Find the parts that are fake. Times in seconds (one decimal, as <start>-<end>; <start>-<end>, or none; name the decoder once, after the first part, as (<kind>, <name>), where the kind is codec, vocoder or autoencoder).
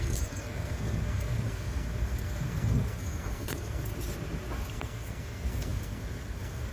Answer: 0.0-3.9 (codec, SNAC); 4.7-6.7